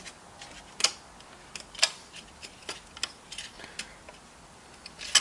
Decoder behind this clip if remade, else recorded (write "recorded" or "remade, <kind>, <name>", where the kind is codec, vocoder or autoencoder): recorded